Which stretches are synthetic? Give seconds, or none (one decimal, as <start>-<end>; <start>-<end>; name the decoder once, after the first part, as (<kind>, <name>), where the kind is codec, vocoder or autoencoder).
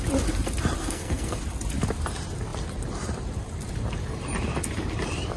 0.8-1.4 (codec, SNAC)